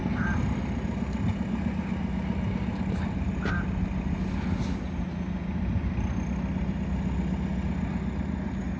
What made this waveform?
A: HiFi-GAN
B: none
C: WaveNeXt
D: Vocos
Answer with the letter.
B